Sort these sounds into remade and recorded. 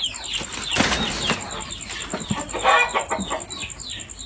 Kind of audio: recorded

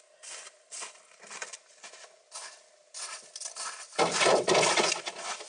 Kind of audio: recorded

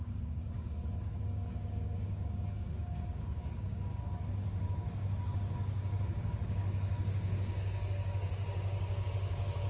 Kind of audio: remade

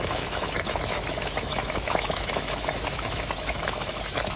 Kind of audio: remade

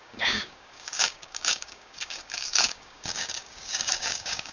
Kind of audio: remade